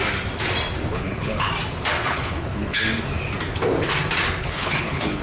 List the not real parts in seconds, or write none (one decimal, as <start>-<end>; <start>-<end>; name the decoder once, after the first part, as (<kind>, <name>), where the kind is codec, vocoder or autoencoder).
0.9-1.5 (codec, HILCodec); 2.0-2.8; 4.4-5.2